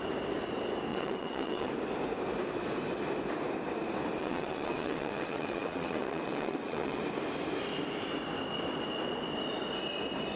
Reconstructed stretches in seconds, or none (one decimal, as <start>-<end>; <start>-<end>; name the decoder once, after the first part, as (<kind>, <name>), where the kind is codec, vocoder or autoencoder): 0.9-1.7 (vocoder, WaveNeXt); 4.2-7.0